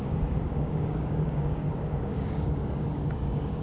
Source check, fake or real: fake